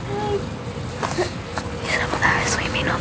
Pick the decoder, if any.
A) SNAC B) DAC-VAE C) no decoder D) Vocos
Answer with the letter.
C